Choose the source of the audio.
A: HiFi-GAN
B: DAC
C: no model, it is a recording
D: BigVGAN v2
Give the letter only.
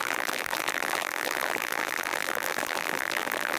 D